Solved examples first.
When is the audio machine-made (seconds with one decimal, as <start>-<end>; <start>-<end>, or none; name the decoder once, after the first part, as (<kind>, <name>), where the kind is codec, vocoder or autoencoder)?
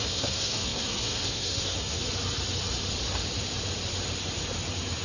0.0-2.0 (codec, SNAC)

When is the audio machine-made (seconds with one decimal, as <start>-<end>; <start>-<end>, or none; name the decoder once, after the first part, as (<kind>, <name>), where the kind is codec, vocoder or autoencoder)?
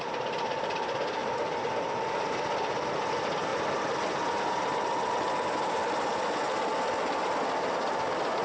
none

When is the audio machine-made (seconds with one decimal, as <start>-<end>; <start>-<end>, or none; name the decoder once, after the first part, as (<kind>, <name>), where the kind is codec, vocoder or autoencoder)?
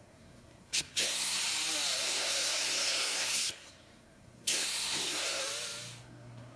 0.0-1.4 (codec, SNAC); 2.0-5.4; 6.0-6.6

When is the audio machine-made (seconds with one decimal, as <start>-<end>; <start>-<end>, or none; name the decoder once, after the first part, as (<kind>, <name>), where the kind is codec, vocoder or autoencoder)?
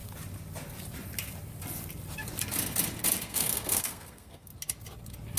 3.2-4.5 (codec, SNAC)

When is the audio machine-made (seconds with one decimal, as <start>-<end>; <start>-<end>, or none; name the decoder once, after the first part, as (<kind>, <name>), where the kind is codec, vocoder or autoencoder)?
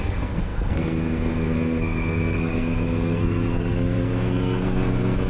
0.0-5.3 (codec, SNAC)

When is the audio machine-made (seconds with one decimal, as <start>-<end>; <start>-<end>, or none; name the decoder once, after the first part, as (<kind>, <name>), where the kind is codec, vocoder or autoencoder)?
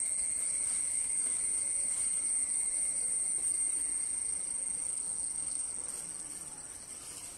0.9-1.4 (codec, SNAC); 4.9-5.7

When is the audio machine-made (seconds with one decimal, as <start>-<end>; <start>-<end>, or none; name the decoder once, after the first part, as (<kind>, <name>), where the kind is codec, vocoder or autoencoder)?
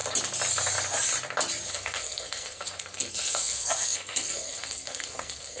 1.7-5.6 (codec, SNAC)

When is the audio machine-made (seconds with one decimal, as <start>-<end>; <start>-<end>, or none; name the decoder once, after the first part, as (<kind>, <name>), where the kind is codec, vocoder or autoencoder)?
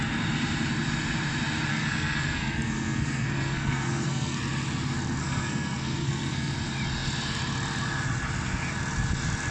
1.7-4.4 (codec, SNAC); 5.2-6.5